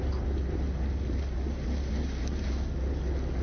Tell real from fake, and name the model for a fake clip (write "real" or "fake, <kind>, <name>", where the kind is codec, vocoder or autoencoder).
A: real